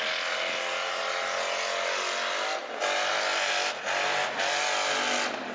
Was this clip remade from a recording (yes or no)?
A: no